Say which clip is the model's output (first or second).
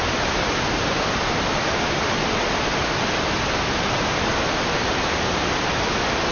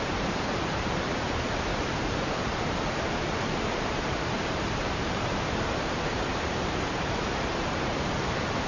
second